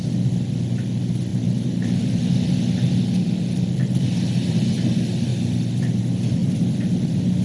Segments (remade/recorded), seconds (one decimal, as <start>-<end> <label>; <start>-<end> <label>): 0.0-1.3 recorded; 1.3-2.2 remade; 2.2-7.4 recorded